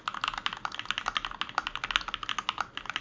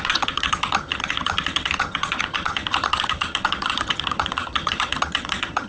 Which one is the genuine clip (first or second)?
first